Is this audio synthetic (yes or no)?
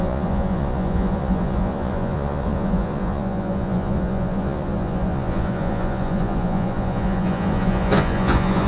yes